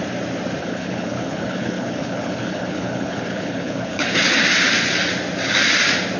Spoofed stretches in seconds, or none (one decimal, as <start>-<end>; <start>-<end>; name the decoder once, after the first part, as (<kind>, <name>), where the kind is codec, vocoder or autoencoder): 0.6-4.3 (codec, HILCodec)